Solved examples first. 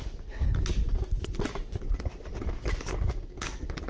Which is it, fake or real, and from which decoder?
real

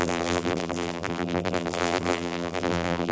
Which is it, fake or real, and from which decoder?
fake, vocoder, BigVGAN v2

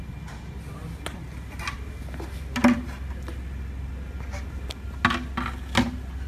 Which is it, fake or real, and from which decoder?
real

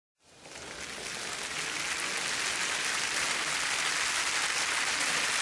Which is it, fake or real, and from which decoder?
real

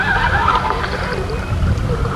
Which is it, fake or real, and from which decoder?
real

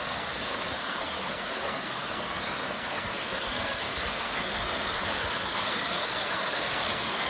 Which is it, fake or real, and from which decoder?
fake, codec, SNAC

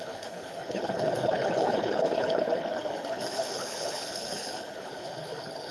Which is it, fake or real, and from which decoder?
fake, codec, HILCodec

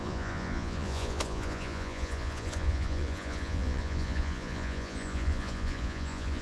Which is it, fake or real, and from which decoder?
fake, vocoder, Vocos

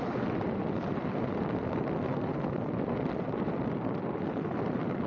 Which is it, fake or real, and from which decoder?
fake, vocoder, BigVGAN v2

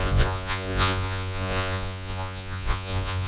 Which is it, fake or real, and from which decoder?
fake, vocoder, Vocos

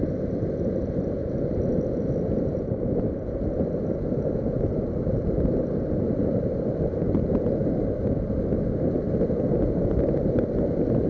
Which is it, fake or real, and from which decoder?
real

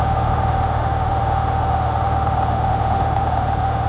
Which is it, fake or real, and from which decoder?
fake, autoencoder, DAC-VAE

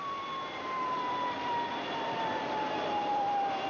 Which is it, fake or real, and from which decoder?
fake, vocoder, BigVGAN v2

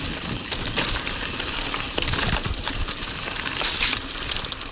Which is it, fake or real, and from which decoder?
fake, vocoder, BigVGAN v2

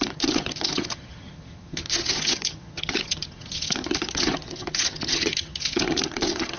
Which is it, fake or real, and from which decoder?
fake, vocoder, HiFi-GAN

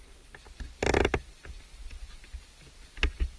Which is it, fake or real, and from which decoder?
real